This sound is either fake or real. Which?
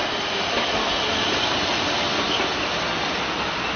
real